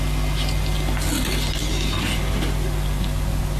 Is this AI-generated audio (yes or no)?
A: no